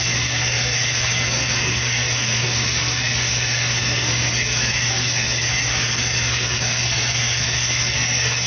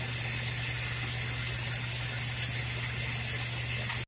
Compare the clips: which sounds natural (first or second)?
second